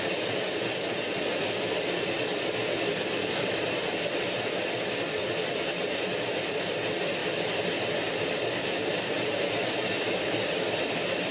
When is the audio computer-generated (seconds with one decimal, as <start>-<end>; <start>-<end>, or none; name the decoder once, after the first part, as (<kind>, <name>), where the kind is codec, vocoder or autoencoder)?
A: 2.6-3.9 (vocoder, BigVGAN v2); 7.2-9.4